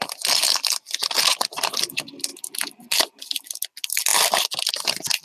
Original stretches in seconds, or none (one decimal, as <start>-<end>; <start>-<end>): 0.0-5.2